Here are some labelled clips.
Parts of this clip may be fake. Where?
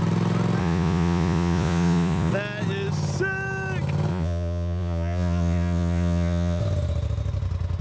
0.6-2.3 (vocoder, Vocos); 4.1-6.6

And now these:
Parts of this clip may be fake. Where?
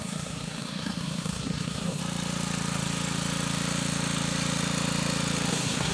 0.0-2.0 (codec, SNAC); 5.5-5.9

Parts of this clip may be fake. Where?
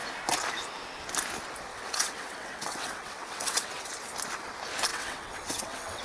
1.7-3.9 (vocoder, WaveNeXt); 4.9-6.0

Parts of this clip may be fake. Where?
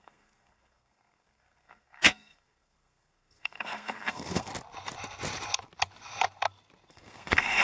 0.0-4.5 (codec, SNAC); 6.9-7.6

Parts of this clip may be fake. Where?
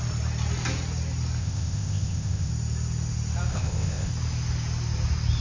1.4-2.5 (codec, ZipCodec); 3.5-4.1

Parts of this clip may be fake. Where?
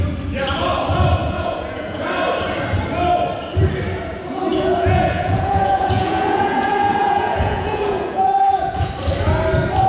1.2-2.0 (vocoder, Vocos); 4.5-8.9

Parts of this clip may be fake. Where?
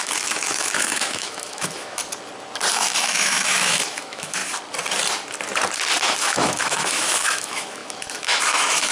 0.0-2.0 (autoencoder, DAC-VAE); 2.7-4.4; 6.2-8.9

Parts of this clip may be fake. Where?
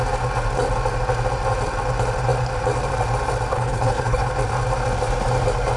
3.5-4.3 (codec, HILCodec)